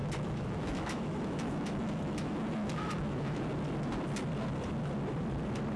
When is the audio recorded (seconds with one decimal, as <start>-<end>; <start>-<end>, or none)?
3.4-5.8